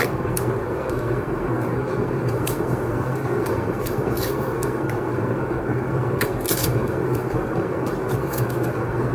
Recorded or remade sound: remade